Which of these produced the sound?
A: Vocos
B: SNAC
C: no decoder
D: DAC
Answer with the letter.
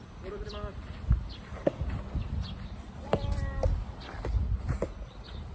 C